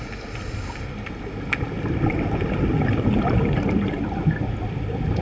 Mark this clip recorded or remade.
recorded